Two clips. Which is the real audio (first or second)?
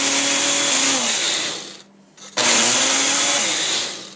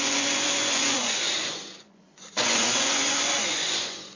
first